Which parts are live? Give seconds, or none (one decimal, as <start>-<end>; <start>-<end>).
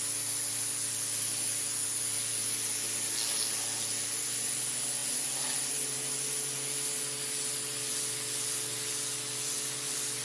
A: 0.0-10.2